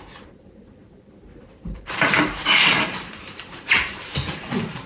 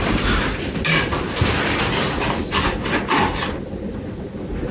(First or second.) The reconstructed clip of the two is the first